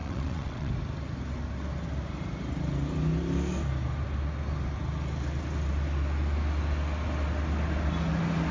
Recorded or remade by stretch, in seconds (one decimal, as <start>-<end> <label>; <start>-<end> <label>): 0.0-0.7 remade; 0.7-8.5 recorded